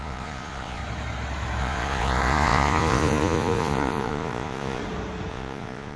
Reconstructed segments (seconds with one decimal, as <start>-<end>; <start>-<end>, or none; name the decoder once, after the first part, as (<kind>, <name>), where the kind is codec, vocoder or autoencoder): 0.0-0.8 (vocoder, Vocos); 1.6-4.8; 5.3-6.0